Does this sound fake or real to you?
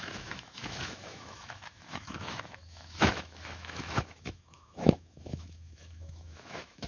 fake